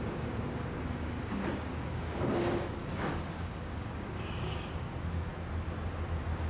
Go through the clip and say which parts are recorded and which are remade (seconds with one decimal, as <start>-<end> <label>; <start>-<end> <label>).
0.0-5.3 remade; 5.3-6.5 recorded